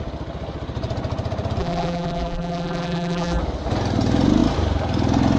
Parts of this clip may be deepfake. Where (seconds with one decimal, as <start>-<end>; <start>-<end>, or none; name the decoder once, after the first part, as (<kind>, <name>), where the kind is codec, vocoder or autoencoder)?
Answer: 1.6-3.4 (vocoder, BigVGAN v2)